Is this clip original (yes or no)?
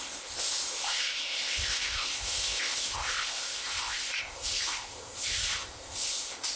no